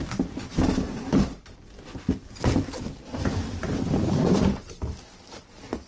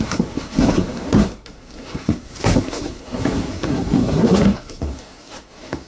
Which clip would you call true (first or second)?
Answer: first